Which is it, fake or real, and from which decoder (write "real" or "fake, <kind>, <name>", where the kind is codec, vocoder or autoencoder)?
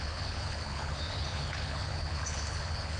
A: fake, codec, HILCodec